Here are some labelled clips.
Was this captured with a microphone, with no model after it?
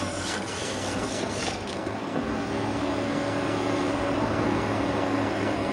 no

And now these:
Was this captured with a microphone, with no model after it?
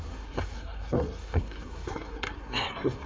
no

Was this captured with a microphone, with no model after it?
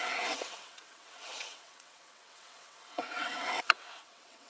no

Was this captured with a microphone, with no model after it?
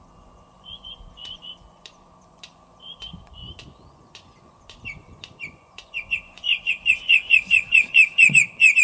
no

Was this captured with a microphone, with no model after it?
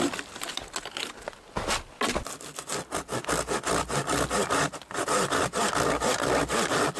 yes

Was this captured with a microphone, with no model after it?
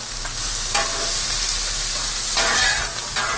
yes